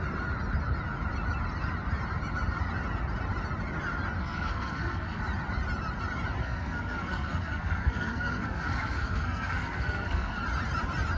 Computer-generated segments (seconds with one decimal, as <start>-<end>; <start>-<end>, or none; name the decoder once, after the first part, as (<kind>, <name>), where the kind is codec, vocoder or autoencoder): 4.2-5.2 (codec, SNAC); 6.4-10.4